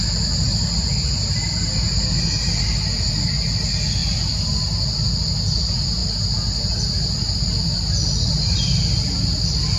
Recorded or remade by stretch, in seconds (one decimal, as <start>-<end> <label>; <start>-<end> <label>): 0.0-9.8 recorded